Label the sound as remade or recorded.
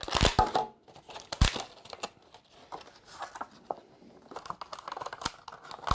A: recorded